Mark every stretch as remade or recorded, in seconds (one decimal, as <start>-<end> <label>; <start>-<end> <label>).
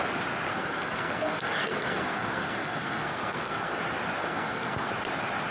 0.0-0.5 recorded; 0.5-3.8 remade; 3.8-4.2 recorded; 4.2-4.9 remade; 4.9-5.5 recorded